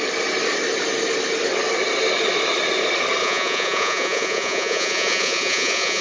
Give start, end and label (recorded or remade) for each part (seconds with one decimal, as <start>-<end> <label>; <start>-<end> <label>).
0.0-3.2 recorded; 3.2-6.0 remade